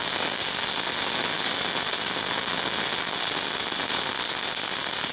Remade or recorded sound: recorded